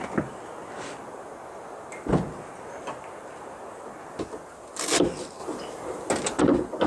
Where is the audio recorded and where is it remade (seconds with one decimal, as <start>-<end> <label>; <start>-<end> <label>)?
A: 0.0-6.9 recorded